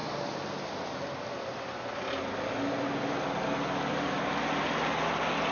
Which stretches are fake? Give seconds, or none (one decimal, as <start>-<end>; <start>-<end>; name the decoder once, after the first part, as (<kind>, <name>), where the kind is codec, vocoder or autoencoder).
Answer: none